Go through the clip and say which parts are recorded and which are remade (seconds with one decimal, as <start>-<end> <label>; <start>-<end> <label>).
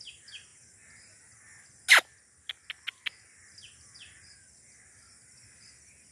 0.0-6.1 recorded